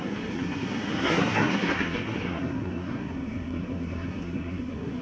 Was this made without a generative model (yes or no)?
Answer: no